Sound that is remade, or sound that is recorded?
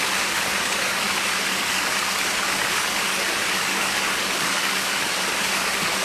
remade